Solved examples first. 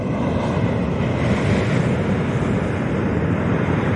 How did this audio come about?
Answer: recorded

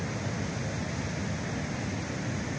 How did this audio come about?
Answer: recorded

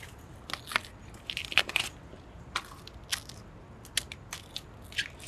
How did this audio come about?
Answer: recorded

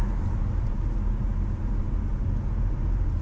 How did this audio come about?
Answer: recorded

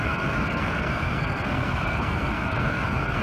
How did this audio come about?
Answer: remade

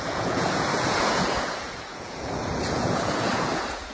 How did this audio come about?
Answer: remade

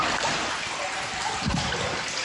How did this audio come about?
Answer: recorded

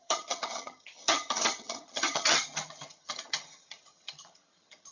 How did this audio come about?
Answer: remade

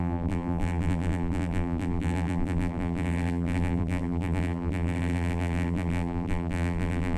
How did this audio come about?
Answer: remade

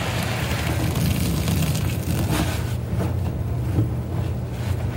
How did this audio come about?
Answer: recorded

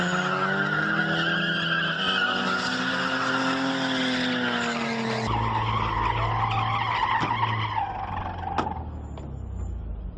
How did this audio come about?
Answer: recorded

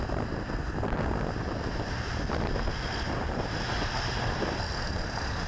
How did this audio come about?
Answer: recorded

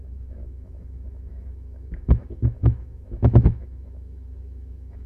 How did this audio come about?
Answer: remade